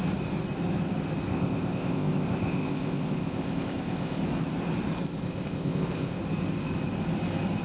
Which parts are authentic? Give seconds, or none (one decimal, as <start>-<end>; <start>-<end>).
0.0-1.3; 4.2-5.2; 6.2-7.6